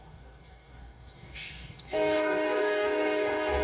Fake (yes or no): yes